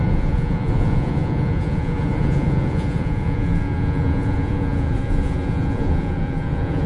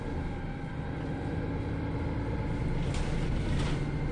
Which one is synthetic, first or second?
first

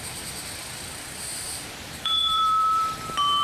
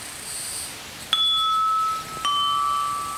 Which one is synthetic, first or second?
first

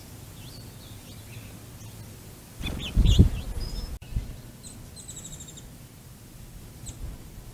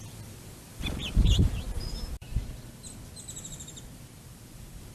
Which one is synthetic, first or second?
second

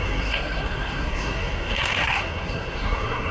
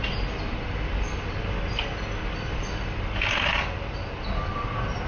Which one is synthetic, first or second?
first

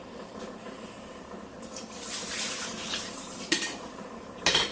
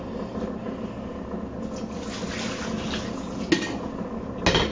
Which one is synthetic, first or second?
first